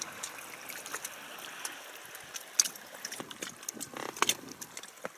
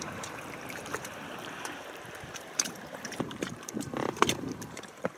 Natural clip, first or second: first